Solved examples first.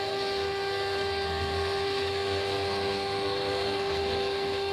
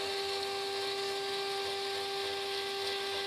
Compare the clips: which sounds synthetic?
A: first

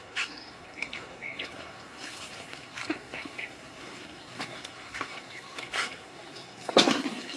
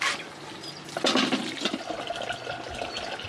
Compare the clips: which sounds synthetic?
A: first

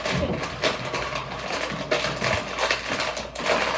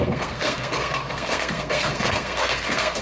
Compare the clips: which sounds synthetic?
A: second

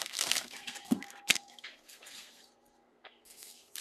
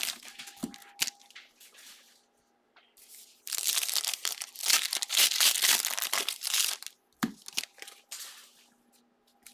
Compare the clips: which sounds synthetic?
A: first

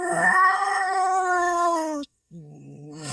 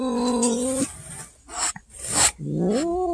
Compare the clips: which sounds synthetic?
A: first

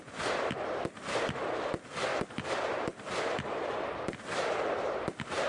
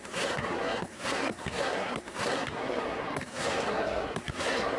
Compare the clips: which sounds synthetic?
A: second